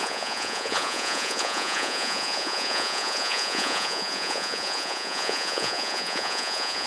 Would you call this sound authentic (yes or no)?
no